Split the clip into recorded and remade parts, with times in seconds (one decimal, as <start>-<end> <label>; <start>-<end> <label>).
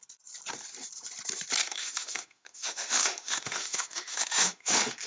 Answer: 0.0-1.6 recorded; 1.6-5.1 remade